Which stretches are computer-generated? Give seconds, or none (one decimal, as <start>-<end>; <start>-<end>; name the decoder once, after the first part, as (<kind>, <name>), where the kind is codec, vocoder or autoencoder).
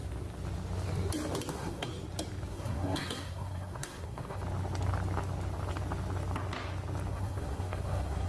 1.5-1.9 (codec, SNAC); 2.5-4.4; 7.1-8.3